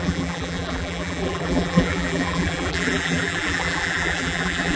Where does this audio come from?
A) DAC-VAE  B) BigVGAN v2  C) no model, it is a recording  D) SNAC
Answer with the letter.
B